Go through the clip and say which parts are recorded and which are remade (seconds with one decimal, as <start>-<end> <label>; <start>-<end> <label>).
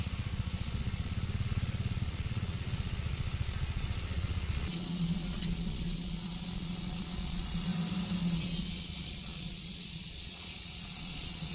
0.0-7.7 remade; 7.7-8.2 recorded; 8.2-11.5 remade